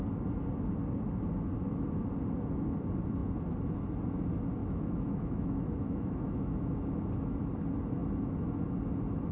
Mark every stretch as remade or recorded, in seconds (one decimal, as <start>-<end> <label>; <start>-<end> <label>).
0.0-4.6 recorded; 4.6-6.7 remade; 6.7-9.3 recorded